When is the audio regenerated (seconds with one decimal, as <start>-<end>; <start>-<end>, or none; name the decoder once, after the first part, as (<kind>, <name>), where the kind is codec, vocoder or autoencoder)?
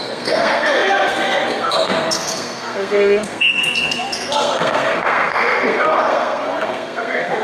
0.0-7.4 (codec, SNAC)